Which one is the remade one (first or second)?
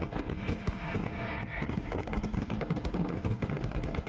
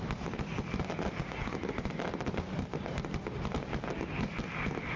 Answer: first